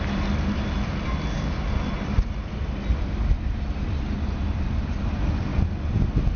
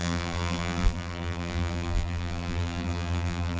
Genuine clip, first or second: first